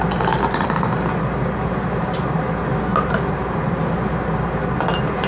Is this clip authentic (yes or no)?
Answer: yes